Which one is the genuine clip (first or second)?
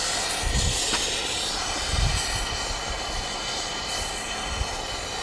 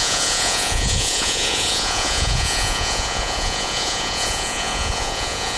first